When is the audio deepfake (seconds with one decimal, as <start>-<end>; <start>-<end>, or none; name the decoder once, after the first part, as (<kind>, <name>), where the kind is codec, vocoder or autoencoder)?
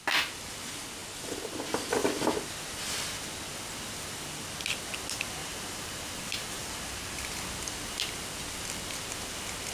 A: 5.4-7.4 (vocoder, BigVGAN v2)